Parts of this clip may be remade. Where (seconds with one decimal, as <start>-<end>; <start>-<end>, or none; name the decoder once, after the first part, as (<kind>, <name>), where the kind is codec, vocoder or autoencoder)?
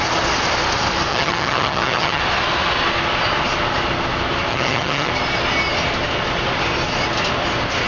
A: 1.1-2.2 (vocoder, HiFi-GAN); 4.5-5.1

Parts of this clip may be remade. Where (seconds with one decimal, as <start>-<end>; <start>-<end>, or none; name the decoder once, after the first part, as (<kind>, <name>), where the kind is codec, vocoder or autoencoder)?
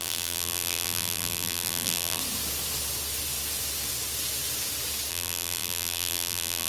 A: 0.0-2.2 (vocoder, BigVGAN v2); 5.1-6.7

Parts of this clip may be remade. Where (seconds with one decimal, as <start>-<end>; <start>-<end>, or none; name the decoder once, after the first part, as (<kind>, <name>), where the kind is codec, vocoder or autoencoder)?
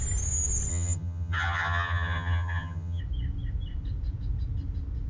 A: 0.7-3.0 (vocoder, HiFi-GAN)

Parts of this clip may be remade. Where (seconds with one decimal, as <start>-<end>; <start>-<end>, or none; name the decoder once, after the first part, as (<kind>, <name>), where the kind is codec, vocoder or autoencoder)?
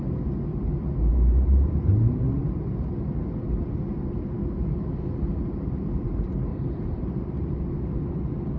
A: 1.1-1.8 (vocoder, BigVGAN v2); 6.5-7.7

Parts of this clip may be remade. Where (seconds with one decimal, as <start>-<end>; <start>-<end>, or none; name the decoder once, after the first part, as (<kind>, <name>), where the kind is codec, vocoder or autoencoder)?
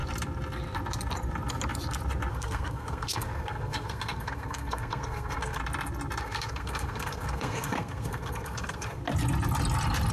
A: 2.3-5.6 (codec, SNAC); 6.2-9.0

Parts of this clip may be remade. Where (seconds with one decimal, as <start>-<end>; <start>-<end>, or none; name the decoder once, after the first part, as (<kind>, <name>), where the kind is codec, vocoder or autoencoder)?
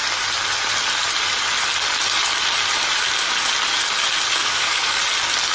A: 4.4-5.0 (codec, DAC)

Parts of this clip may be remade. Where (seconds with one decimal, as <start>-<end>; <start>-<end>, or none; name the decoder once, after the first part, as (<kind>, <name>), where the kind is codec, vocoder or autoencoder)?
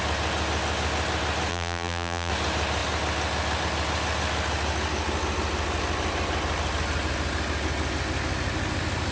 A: 1.5-2.3 (vocoder, BigVGAN v2)